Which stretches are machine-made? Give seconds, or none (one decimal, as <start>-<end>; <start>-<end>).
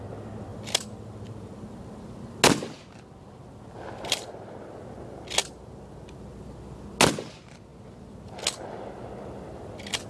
0.5-1.6